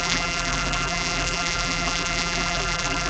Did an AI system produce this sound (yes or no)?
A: yes